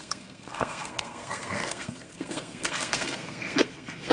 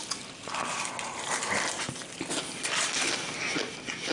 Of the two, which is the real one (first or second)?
second